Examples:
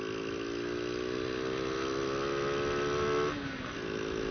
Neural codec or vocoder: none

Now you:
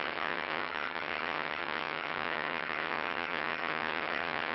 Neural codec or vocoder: vocoder, HiFi-GAN